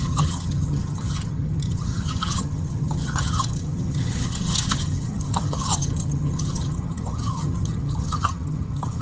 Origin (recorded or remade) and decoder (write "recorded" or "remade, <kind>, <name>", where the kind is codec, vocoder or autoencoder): remade, vocoder, HiFi-GAN